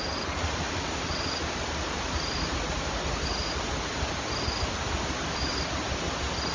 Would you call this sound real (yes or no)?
yes